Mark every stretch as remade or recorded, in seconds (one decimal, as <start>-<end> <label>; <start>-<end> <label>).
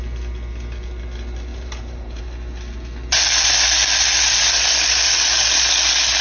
0.0-1.5 recorded; 1.5-2.2 remade; 2.2-6.2 recorded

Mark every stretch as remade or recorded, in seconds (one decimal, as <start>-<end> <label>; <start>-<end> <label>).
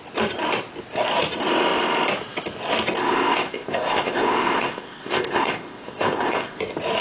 0.0-3.0 recorded; 3.0-6.6 remade; 6.6-7.0 recorded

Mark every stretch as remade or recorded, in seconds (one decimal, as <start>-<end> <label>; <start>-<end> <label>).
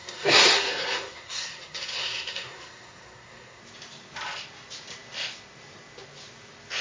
0.0-3.6 remade; 3.6-6.8 recorded